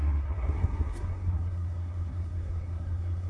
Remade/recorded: remade